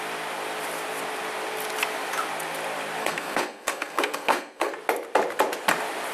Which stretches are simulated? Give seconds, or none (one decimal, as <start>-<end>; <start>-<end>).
3.0-4.7